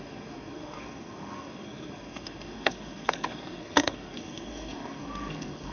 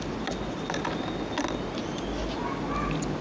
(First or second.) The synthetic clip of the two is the first